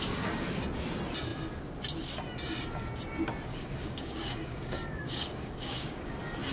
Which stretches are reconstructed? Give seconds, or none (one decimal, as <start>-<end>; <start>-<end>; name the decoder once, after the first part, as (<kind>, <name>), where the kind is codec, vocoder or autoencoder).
3.5-6.1 (codec, DAC)